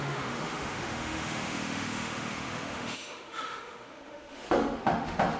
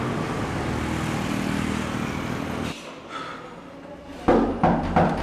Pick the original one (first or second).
second